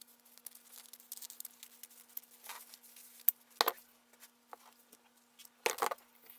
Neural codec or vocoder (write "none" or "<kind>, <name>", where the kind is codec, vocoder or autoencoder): none